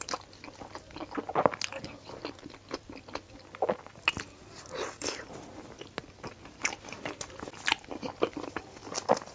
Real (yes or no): yes